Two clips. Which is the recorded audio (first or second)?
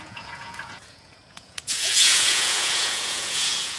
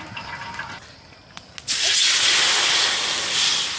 second